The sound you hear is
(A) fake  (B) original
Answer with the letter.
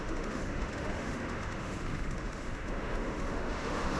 A